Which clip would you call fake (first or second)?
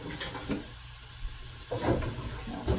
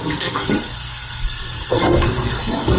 second